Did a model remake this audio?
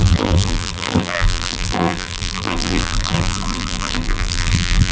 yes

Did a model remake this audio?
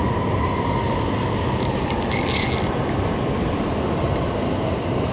no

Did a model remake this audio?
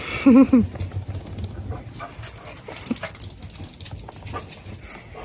no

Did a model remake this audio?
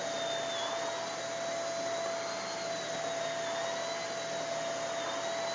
no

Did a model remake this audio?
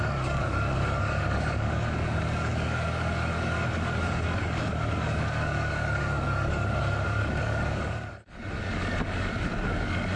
yes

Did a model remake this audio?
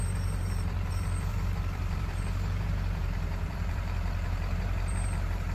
yes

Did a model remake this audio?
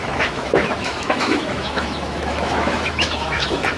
yes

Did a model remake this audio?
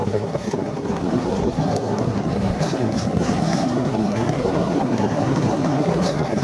yes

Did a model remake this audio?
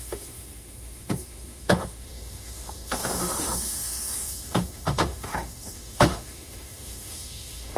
yes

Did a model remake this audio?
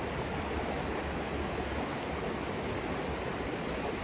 no